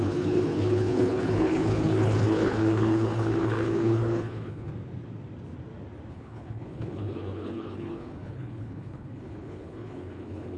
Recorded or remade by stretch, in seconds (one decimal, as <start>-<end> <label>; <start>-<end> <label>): 0.0-4.7 remade; 4.7-6.1 recorded; 6.1-10.6 remade